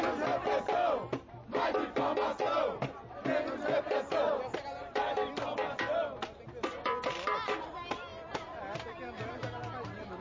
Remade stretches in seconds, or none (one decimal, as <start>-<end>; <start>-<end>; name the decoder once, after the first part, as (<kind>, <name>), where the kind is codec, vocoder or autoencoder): none